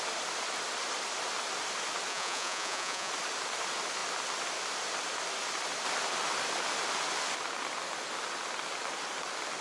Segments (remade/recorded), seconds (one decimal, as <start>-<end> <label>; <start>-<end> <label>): 0.0-2.1 recorded; 2.1-3.1 remade; 3.1-9.6 recorded